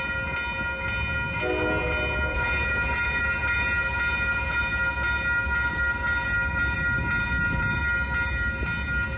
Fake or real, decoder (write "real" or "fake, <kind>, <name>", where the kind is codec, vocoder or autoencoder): real